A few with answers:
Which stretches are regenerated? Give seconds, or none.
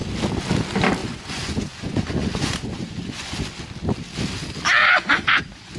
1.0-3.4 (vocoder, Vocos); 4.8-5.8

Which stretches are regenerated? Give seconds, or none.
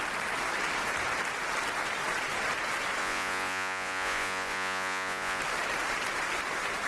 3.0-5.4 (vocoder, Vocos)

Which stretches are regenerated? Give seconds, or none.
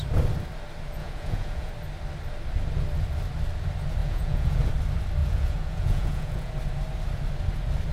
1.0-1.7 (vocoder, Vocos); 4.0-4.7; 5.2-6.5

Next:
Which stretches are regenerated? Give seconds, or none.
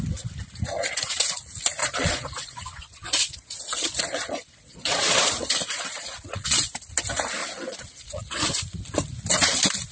1.8-6.8 (vocoder, Vocos); 7.4-8.5